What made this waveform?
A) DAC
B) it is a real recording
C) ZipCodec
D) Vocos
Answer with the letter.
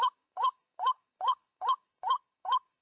A